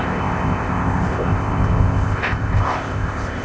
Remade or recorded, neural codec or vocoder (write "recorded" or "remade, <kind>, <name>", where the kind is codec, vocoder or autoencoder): remade, codec, ZipCodec